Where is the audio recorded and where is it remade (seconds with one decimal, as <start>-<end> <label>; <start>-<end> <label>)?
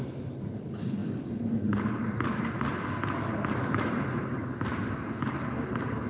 0.0-6.1 recorded